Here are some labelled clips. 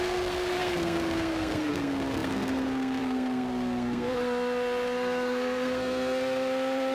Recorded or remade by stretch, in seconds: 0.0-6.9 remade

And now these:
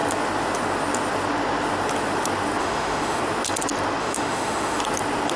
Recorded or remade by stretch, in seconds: 0.0-2.6 recorded; 2.6-3.2 remade; 3.2-4.0 recorded; 4.0-4.8 remade; 4.8-5.4 recorded

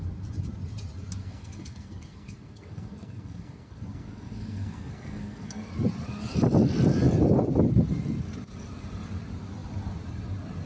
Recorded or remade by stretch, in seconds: 0.0-1.2 recorded; 1.2-5.7 remade; 5.7-10.7 recorded

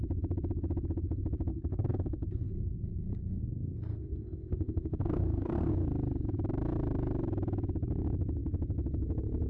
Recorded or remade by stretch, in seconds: 0.0-1.5 recorded; 1.5-2.5 remade; 2.5-3.9 recorded; 3.9-5.7 remade; 5.7-9.5 recorded

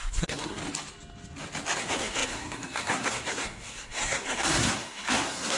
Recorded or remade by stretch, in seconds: 0.0-0.6 remade; 0.6-1.8 recorded; 1.8-5.6 remade

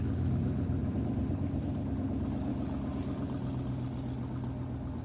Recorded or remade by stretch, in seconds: 0.0-0.8 recorded; 0.8-1.9 remade; 1.9-5.0 recorded

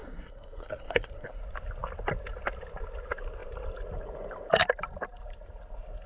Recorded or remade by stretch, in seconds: 0.0-1.4 remade; 1.4-6.1 recorded